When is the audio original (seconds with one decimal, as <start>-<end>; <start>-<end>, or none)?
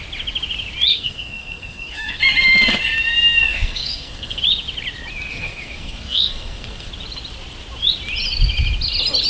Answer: 0.0-0.9; 2.2-3.5; 4.4-5.3; 6.9-9.3